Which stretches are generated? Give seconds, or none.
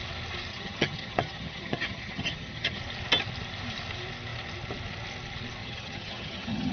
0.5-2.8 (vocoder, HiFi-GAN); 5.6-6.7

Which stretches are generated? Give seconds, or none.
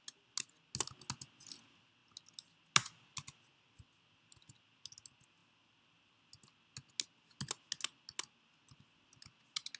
none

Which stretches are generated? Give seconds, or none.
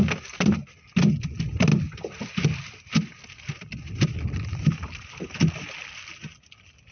none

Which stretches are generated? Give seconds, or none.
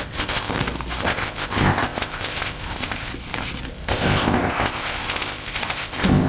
0.0-0.5 (codec, ZipCodec); 1.0-3.1; 3.7-6.3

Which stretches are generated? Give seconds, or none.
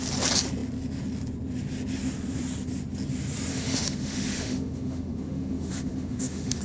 3.5-6.6 (autoencoder, DAC-VAE)